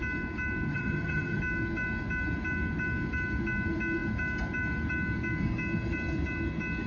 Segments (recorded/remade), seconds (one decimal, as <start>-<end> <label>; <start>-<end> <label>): 0.0-0.7 recorded; 0.7-1.4 remade; 1.4-6.9 recorded